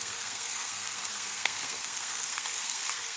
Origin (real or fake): fake